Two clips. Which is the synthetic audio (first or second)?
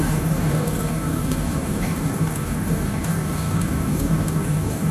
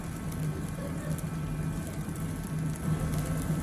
first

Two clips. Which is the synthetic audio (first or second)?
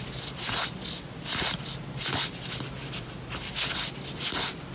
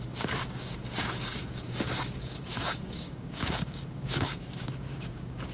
second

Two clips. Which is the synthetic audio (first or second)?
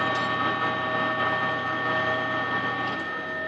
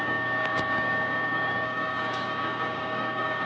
second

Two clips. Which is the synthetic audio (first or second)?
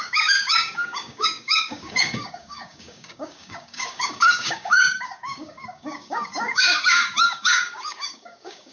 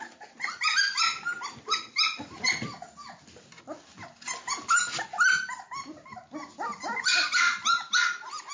first